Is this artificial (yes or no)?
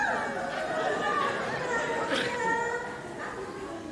no